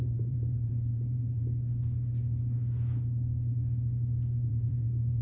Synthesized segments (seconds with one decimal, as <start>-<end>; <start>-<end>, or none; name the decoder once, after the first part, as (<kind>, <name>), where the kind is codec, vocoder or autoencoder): 0.0-1.4 (vocoder, BigVGAN v2); 4.5-5.2

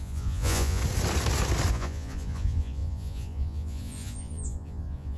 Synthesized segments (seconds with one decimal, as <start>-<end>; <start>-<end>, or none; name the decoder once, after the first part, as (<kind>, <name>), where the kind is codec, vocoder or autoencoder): 0.0-0.8 (vocoder, Vocos); 1.7-5.2

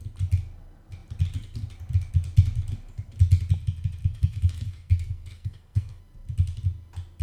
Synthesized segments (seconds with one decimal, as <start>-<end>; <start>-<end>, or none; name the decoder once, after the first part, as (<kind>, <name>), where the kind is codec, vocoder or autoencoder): 4.0-6.0 (codec, SNAC)

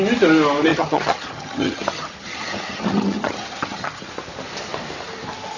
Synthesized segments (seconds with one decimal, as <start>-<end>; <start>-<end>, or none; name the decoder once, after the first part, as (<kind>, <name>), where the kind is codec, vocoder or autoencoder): 0.7-4.1 (vocoder, HiFi-GAN)